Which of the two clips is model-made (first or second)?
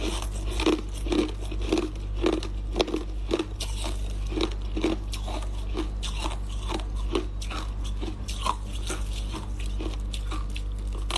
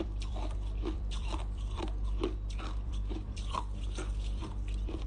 second